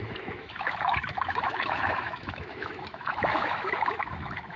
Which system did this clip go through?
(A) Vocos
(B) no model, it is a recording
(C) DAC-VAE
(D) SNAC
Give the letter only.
C